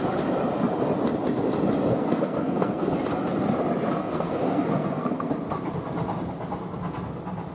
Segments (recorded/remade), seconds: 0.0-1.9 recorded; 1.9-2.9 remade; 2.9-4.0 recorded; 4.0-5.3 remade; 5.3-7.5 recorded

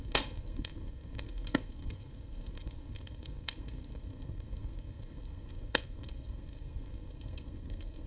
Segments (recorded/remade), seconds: 0.0-8.1 remade

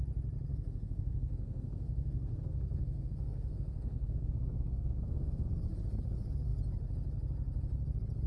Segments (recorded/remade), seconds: 0.0-0.5 recorded; 0.5-5.5 remade; 5.5-8.3 recorded

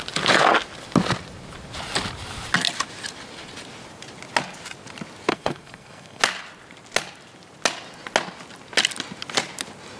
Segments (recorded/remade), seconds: 0.0-5.3 recorded; 5.3-6.2 remade; 6.2-10.0 recorded